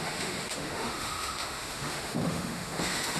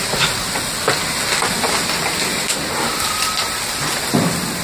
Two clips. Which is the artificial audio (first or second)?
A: first